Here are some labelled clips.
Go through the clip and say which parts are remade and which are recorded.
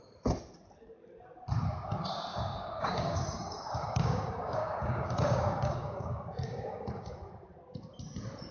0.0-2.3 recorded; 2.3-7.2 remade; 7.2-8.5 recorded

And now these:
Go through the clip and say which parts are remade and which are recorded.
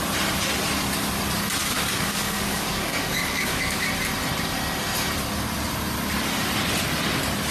0.0-1.6 recorded; 1.6-3.9 remade; 3.9-7.5 recorded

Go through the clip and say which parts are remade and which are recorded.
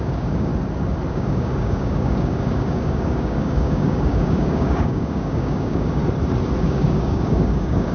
0.0-0.5 remade; 0.5-1.1 recorded; 1.1-6.0 remade; 6.0-6.6 recorded; 6.6-7.9 remade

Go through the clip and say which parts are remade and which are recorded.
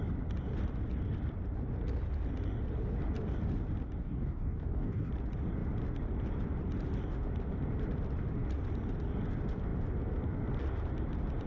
0.0-4.0 recorded; 4.0-5.1 remade; 5.1-11.5 recorded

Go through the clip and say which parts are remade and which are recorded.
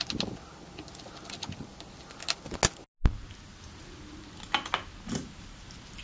0.0-6.0 recorded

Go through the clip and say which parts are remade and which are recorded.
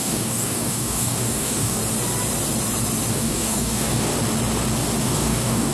0.0-1.8 remade; 1.8-3.1 recorded; 3.1-4.1 remade; 4.1-5.0 recorded; 5.0-5.7 remade